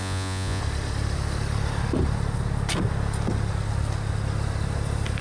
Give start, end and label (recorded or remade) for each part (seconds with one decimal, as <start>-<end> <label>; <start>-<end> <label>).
0.0-0.6 remade; 0.6-5.2 recorded